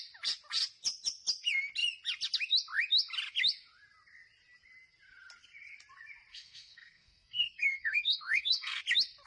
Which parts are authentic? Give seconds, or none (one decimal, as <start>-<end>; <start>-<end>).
0.0-6.3; 8.8-9.3